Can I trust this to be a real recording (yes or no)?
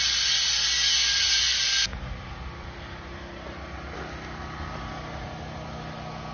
yes